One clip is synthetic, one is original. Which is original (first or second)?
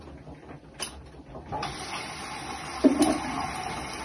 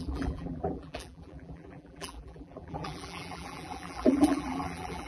first